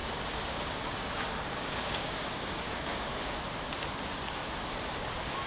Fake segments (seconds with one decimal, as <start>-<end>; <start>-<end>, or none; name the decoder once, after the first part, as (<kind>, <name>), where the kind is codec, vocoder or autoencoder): 0.0-3.3 (codec, DAC)